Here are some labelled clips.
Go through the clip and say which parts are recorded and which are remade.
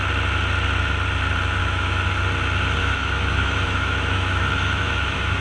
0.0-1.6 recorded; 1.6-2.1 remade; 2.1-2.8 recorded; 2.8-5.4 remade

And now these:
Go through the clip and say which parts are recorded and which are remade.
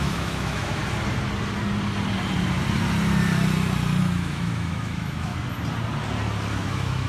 0.0-0.8 remade; 0.8-4.0 recorded; 4.0-5.3 remade; 5.3-6.5 recorded; 6.5-7.1 remade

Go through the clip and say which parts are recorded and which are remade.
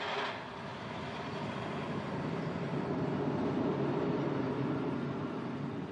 0.0-5.9 recorded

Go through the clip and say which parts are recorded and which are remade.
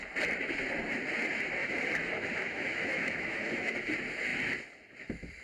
0.0-1.6 recorded; 1.6-3.9 remade; 3.9-5.4 recorded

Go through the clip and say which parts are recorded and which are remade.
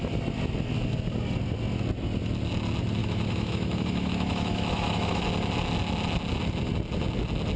0.0-3.0 recorded; 3.0-5.2 remade; 5.2-7.6 recorded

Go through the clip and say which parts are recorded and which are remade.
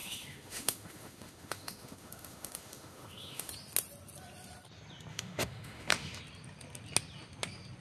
0.0-3.5 remade; 3.5-5.1 recorded; 5.1-6.2 remade; 6.2-7.8 recorded